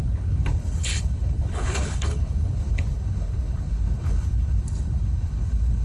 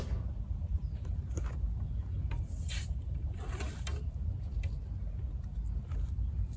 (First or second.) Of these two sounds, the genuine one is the second